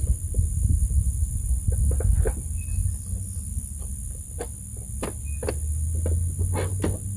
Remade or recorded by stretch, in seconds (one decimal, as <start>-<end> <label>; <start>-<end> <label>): 0.0-7.2 recorded